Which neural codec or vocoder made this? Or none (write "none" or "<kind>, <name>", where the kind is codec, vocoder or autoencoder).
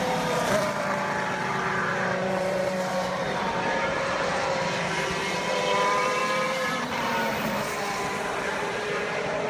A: vocoder, BigVGAN v2